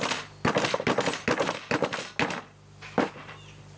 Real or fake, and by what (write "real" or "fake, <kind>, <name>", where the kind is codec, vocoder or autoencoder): real